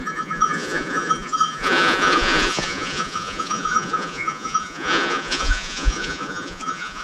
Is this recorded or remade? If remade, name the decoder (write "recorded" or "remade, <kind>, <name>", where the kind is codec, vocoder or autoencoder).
remade, vocoder, Vocos